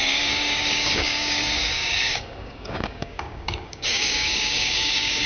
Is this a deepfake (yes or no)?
yes